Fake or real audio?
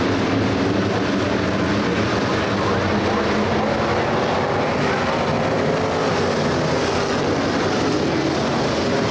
real